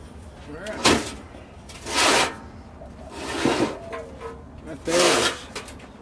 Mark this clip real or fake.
real